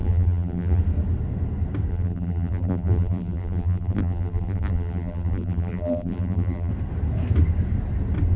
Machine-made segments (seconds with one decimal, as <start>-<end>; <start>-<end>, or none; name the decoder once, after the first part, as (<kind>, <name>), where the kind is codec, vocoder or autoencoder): 0.0-0.8 (vocoder, BigVGAN v2); 1.9-6.7